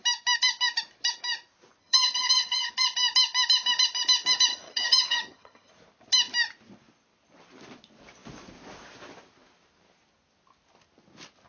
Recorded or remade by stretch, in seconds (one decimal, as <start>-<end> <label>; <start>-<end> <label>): 0.0-1.8 recorded; 1.8-2.7 remade; 2.7-4.5 recorded; 4.5-5.7 remade; 5.7-11.5 recorded